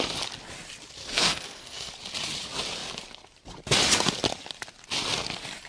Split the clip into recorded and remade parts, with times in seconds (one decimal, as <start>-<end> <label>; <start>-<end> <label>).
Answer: 0.0-1.0 recorded; 1.0-1.9 remade; 1.9-5.7 recorded